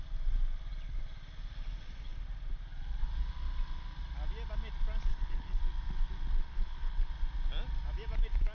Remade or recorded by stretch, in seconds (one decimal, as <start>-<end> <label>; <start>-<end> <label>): 0.0-5.1 recorded; 5.1-5.6 remade; 5.6-6.4 recorded; 6.4-7.1 remade; 7.1-8.5 recorded

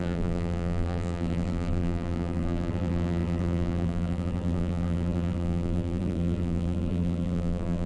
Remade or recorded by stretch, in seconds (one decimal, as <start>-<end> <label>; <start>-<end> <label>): 0.0-7.9 remade

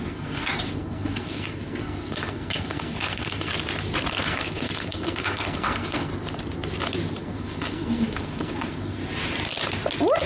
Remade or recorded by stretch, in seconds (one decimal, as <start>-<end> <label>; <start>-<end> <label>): 0.0-3.5 remade; 3.5-4.1 recorded; 4.1-6.1 remade; 6.1-7.2 recorded; 7.2-9.0 remade; 9.0-10.3 recorded

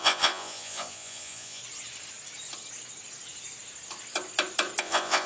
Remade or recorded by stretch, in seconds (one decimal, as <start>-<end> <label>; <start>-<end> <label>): 0.0-1.6 remade; 1.6-4.8 recorded; 4.8-5.3 remade